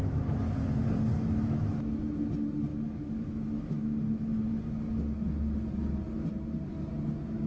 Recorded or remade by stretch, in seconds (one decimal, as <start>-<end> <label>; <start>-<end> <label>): 0.0-1.1 recorded; 1.1-2.0 remade; 2.0-2.7 recorded; 2.7-4.6 remade; 4.6-7.5 recorded